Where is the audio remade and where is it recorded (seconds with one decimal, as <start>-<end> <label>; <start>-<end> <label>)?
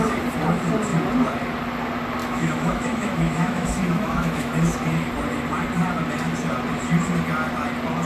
0.0-2.2 recorded; 2.2-4.5 remade; 4.5-8.1 recorded